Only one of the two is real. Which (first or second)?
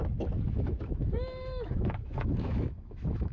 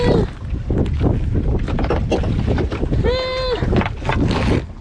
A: second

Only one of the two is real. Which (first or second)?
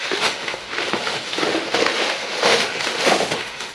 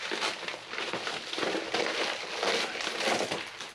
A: second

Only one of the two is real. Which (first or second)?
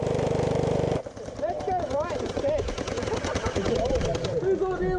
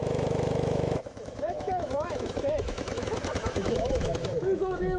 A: first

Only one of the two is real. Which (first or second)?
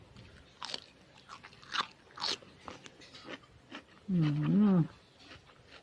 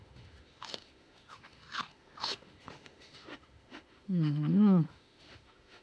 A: first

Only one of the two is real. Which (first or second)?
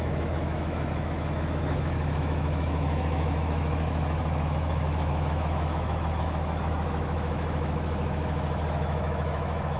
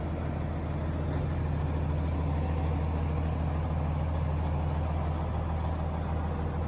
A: second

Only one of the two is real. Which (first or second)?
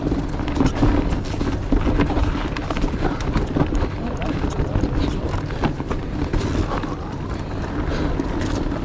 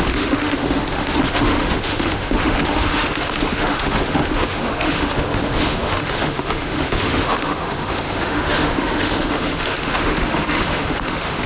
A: first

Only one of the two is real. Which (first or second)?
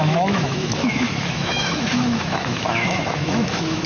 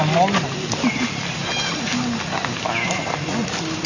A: second